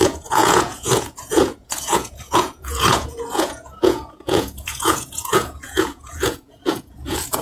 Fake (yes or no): yes